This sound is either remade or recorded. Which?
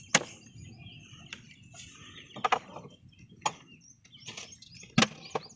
recorded